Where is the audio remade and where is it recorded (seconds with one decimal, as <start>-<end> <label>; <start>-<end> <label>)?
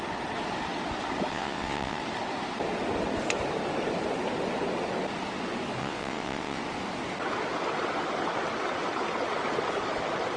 0.0-1.3 recorded; 1.3-2.0 remade; 2.0-5.8 recorded; 5.8-6.6 remade; 6.6-10.4 recorded